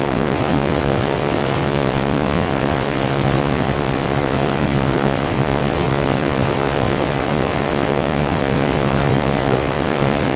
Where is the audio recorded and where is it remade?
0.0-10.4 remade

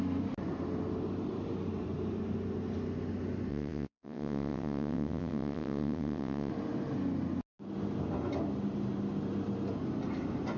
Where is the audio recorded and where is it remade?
0.0-3.5 recorded; 3.5-6.5 remade; 6.5-10.6 recorded

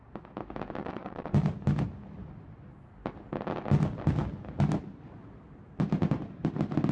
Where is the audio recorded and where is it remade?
0.0-0.8 recorded; 0.8-1.3 remade; 1.3-6.9 recorded

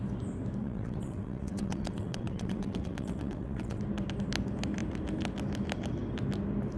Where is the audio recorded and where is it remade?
0.0-0.6 recorded; 0.6-3.8 remade; 3.8-6.8 recorded

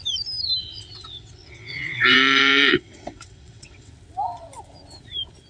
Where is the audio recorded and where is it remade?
0.0-0.6 recorded; 0.6-3.9 remade; 3.9-5.5 recorded

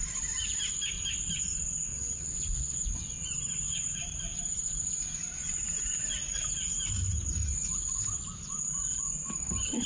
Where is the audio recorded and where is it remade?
0.0-1.9 recorded; 1.9-2.8 remade; 2.8-9.9 recorded

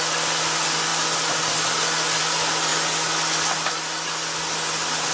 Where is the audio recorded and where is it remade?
0.0-5.1 recorded

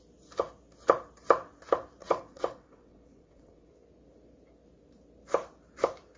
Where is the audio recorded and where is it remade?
0.0-2.0 recorded; 2.0-3.7 remade; 3.7-6.2 recorded